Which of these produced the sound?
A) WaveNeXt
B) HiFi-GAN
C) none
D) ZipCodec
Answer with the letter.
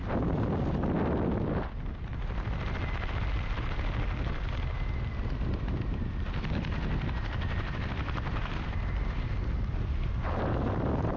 C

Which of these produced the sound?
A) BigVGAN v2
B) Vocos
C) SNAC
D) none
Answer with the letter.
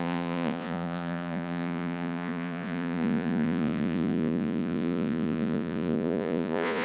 B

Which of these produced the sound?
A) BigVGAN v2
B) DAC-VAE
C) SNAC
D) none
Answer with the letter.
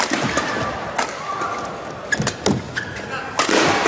D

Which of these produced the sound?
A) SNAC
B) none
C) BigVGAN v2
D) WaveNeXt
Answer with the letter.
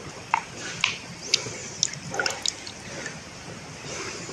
B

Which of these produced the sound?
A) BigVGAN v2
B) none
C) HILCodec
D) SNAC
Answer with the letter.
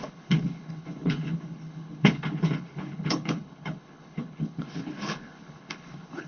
C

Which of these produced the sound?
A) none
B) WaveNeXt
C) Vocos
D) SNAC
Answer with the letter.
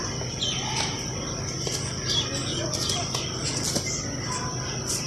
A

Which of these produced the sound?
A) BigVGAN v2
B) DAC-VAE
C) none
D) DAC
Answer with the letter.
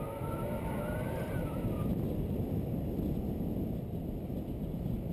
C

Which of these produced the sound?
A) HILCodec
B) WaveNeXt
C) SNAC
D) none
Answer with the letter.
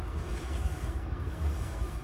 C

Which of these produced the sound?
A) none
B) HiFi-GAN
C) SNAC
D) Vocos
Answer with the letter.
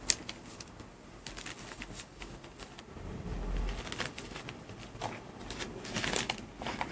A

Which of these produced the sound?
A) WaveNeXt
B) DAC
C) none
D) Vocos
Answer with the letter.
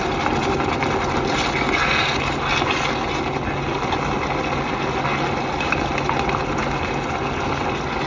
C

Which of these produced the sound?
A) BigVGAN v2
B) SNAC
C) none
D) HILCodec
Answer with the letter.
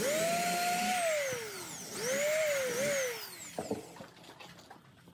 C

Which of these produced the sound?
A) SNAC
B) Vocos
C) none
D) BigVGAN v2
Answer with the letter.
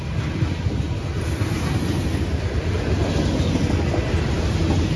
C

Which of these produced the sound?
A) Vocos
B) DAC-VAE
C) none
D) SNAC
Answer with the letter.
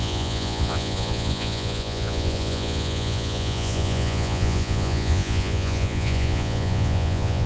A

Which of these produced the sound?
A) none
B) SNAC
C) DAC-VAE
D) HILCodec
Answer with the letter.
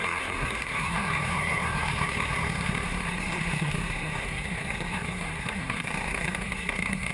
B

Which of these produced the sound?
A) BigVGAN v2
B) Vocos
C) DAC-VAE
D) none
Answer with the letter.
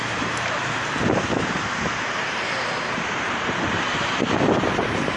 A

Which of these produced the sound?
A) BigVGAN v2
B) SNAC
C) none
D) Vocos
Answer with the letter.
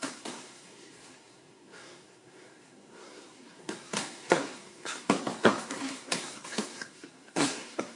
B